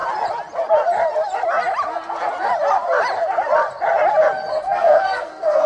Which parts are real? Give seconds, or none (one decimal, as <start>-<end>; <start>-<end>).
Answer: 0.0-4.5